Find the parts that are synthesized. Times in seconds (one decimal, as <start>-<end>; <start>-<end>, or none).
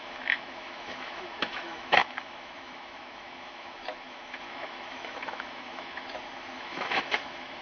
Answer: 0.0-7.6